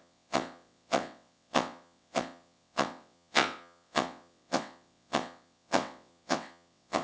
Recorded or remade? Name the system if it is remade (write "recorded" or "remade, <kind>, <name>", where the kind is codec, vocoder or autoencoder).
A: remade, vocoder, WaveNeXt